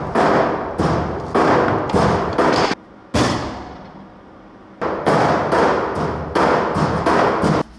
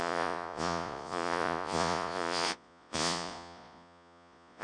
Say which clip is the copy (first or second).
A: second